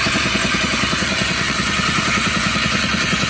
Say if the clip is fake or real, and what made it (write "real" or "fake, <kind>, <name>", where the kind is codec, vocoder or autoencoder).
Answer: fake, vocoder, Vocos